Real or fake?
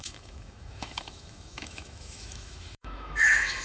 fake